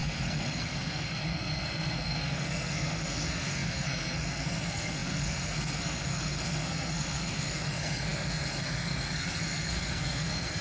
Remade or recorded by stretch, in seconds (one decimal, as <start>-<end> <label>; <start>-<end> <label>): 0.0-10.6 remade